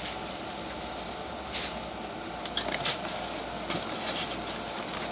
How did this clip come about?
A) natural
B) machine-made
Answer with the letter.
A